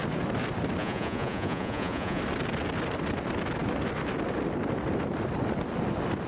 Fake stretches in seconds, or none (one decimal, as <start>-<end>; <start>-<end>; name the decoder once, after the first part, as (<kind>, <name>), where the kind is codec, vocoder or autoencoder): 0.8-2.2 (vocoder, Vocos)